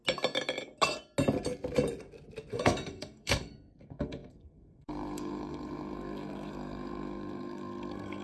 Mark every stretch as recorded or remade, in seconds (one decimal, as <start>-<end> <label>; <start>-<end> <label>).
0.0-2.5 recorded; 2.5-8.2 remade